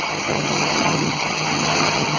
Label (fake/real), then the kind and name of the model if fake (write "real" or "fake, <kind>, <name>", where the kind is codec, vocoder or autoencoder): fake, vocoder, HiFi-GAN